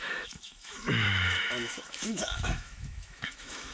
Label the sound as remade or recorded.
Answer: remade